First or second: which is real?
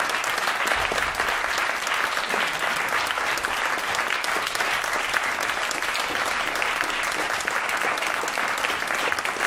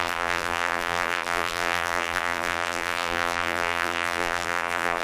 first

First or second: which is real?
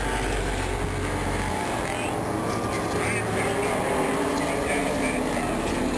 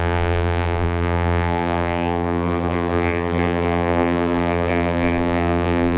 first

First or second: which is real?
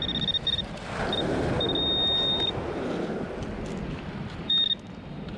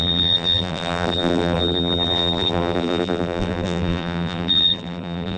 first